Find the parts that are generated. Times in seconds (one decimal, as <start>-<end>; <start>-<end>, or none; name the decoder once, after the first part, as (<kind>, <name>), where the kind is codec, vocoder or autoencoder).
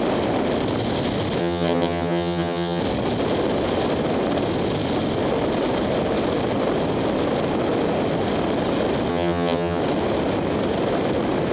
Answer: 1.4-2.8 (vocoder, HiFi-GAN); 9.1-9.8